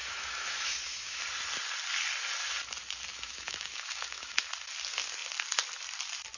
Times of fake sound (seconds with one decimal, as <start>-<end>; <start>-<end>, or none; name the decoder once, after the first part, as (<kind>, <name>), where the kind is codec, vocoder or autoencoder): 0.0-1.2 (autoencoder, DAC-VAE); 3.1-4.5